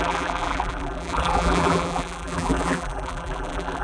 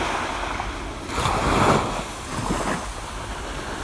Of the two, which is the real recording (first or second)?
second